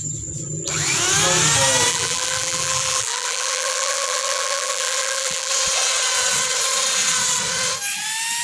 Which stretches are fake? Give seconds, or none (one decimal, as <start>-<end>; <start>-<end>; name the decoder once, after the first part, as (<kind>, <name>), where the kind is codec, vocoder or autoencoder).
1.9-5.5 (vocoder, BigVGAN v2)